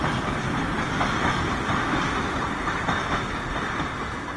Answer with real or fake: real